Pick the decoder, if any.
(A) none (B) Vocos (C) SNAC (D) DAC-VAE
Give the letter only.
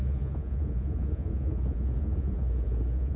B